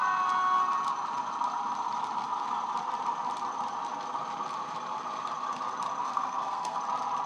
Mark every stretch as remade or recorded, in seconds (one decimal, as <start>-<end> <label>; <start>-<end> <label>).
0.0-6.0 recorded; 6.0-6.8 remade; 6.8-7.3 recorded